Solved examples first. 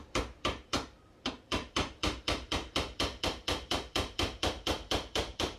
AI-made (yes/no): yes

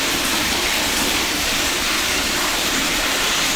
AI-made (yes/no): yes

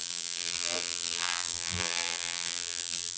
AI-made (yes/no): yes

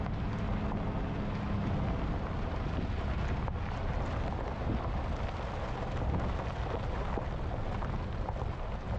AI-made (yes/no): no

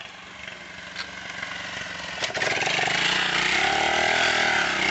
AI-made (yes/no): no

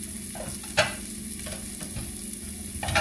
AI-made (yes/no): no